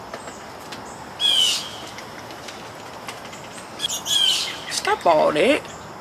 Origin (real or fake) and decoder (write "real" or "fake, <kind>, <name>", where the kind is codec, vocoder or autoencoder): real